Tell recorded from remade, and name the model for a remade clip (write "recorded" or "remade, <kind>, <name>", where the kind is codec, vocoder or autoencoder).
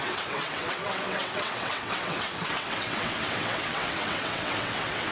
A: remade, vocoder, WaveNeXt